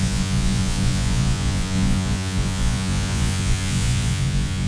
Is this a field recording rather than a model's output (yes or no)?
no